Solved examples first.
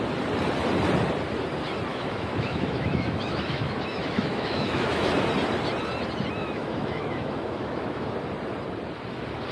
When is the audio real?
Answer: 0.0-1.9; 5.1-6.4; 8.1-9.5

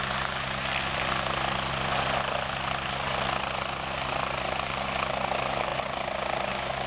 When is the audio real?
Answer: 0.0-6.9

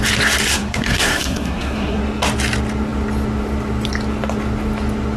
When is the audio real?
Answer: 0.0-0.5; 2.0-5.2

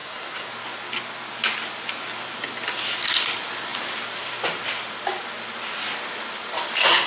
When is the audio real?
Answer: 0.5-7.1

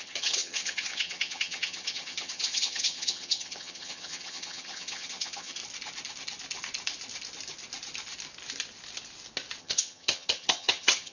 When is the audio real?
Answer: 5.6-9.6

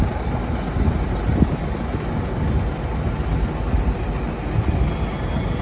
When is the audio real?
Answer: 0.0-5.6

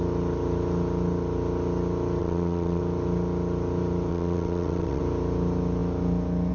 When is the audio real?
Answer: 0.0-2.2; 2.8-4.1; 5.0-6.5

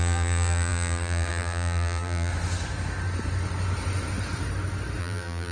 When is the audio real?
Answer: 2.3-5.0